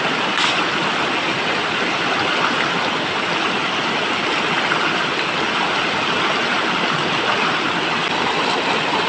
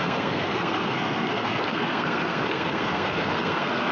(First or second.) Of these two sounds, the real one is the first